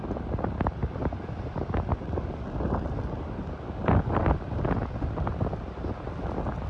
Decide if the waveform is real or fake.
real